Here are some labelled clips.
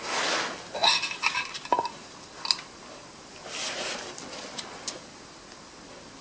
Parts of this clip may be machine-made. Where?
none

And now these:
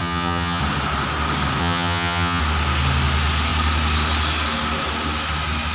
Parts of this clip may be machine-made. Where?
0.0-0.6; 1.6-2.4

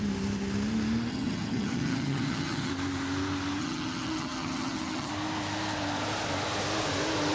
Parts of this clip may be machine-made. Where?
1.1-2.7; 3.6-5.1

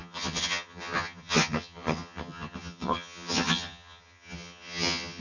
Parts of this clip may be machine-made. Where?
0.0-5.2